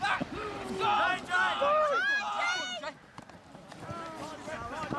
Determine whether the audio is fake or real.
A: real